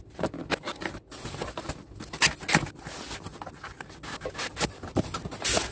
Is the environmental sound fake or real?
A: real